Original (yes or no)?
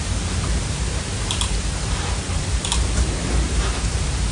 no